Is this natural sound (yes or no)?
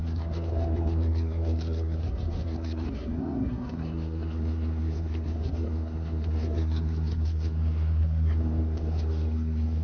no